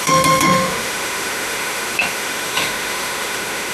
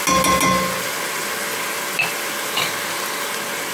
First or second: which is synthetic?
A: first